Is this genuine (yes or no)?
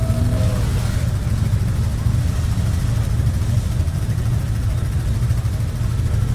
yes